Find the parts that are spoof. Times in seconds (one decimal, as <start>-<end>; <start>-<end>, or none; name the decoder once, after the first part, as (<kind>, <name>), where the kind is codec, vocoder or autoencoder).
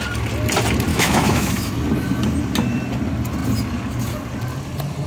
0.9-1.7 (autoencoder, DAC-VAE)